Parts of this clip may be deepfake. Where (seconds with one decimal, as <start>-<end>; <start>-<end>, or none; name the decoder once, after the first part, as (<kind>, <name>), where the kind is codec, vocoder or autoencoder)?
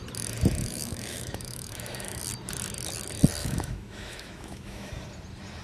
0.6-2.2 (autoencoder, DAC-VAE); 3.4-4.9